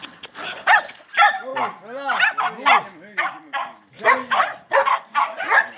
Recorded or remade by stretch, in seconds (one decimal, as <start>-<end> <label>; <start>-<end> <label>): 0.0-5.8 recorded